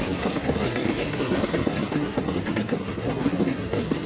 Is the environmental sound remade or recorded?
remade